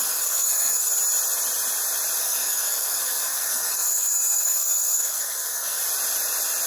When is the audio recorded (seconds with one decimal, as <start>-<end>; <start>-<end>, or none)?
0.9-2.2; 5.8-6.7